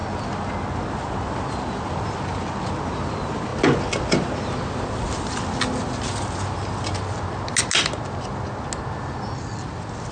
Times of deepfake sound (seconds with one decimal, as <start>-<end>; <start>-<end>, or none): none